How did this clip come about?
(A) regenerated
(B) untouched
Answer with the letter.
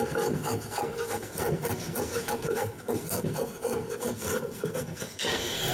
A